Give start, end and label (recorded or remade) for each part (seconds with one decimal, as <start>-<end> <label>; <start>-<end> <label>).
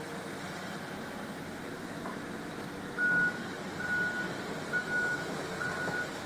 0.0-2.1 recorded; 2.1-3.4 remade; 3.4-4.8 recorded; 4.8-5.5 remade; 5.5-6.3 recorded